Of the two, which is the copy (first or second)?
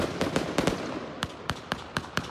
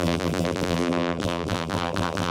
second